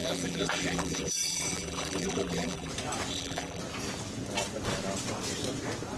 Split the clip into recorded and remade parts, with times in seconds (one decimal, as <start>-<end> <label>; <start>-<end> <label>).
0.0-2.7 remade; 2.7-3.1 recorded; 3.1-3.6 remade; 3.6-6.0 recorded